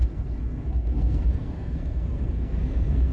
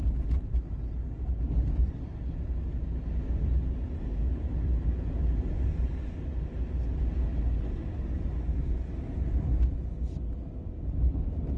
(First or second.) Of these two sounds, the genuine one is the second